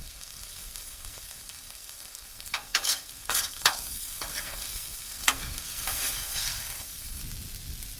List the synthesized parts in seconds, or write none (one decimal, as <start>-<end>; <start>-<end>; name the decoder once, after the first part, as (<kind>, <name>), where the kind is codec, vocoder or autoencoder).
0.0-7.2 (codec, SNAC)